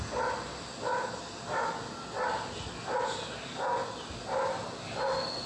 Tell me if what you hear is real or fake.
real